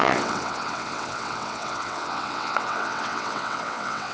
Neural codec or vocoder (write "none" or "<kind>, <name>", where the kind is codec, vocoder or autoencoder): vocoder, WaveNeXt